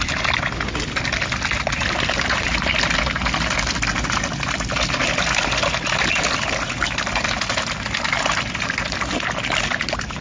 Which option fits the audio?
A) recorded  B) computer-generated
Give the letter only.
A